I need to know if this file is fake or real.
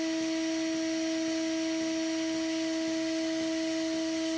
real